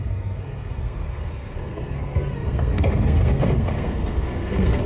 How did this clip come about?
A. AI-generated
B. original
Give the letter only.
A